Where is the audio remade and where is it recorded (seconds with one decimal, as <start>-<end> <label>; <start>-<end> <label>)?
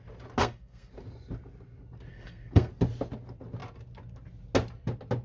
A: 0.0-0.4 recorded; 0.4-0.9 remade; 0.9-2.1 recorded; 2.1-2.7 remade; 2.7-5.2 recorded